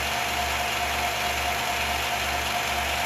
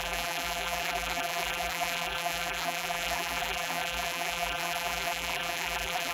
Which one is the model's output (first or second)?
second